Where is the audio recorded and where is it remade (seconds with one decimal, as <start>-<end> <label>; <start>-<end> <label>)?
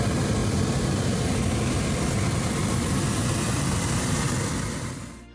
0.0-5.3 recorded